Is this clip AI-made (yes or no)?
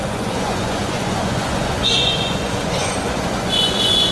yes